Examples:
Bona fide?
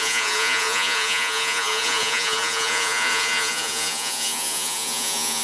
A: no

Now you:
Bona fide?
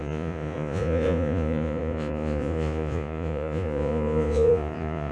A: no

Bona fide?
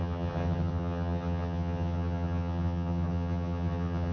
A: no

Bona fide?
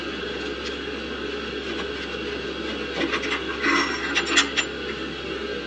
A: yes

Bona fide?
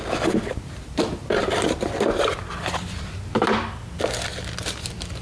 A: yes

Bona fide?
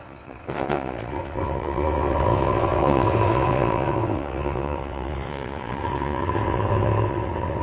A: no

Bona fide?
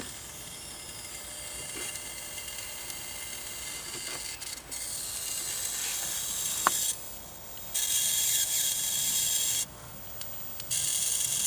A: yes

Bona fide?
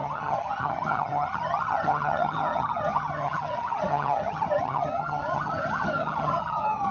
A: no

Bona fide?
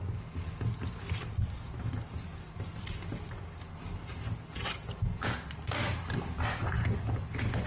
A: yes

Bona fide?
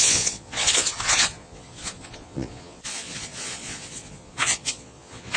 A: no